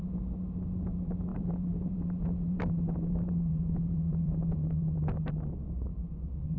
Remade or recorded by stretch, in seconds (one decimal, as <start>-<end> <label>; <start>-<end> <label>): 0.0-1.3 recorded; 1.3-5.3 remade; 5.3-5.9 recorded; 5.9-6.6 remade